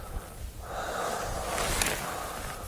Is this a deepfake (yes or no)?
no